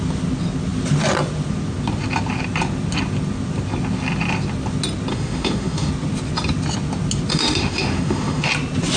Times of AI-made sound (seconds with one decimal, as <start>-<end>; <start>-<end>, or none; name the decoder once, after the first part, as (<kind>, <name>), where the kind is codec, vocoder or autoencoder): 5.1-5.9 (autoencoder, DAC-VAE); 7.3-8.5